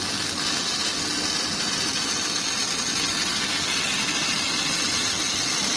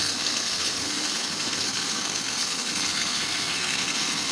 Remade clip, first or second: second